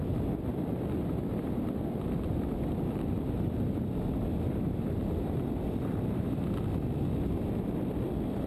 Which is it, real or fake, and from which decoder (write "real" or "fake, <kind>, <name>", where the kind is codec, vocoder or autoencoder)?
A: real